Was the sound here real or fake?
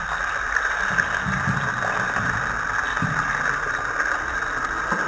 real